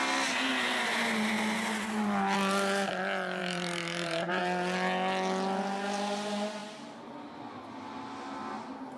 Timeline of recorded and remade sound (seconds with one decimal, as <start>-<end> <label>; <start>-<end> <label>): 0.0-3.4 recorded; 3.4-4.4 remade; 4.4-9.0 recorded